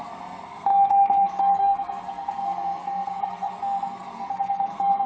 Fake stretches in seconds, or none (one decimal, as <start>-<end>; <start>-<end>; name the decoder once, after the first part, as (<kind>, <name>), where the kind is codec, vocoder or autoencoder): 0.0-5.1 (codec, SNAC)